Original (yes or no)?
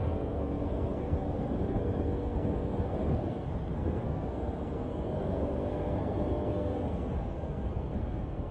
no